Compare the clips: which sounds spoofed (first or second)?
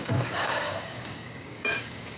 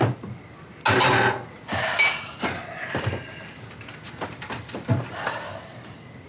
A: first